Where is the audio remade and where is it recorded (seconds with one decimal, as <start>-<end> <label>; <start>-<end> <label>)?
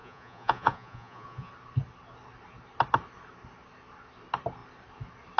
0.0-1.5 remade; 1.5-5.4 recorded